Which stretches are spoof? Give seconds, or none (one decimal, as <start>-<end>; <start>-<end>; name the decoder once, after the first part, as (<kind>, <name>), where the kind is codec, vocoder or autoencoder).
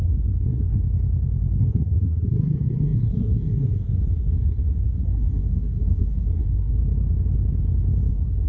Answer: 0.0-0.8 (codec, SNAC); 1.6-6.8; 8.1-8.5